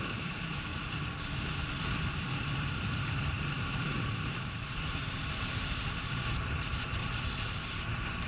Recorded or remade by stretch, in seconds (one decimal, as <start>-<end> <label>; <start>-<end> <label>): 0.0-0.7 remade; 0.7-1.2 recorded; 1.2-7.0 remade; 7.0-7.9 recorded; 7.9-8.3 remade